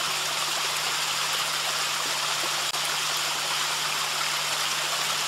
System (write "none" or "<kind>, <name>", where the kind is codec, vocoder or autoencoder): none